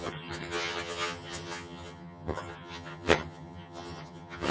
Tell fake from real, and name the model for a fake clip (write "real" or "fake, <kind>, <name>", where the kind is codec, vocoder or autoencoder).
fake, vocoder, HiFi-GAN